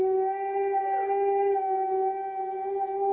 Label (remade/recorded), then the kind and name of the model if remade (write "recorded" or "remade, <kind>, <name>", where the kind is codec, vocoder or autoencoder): recorded